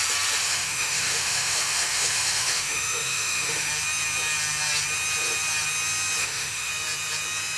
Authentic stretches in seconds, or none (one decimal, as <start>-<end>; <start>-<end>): 0.0-0.4; 3.7-6.2; 6.7-7.6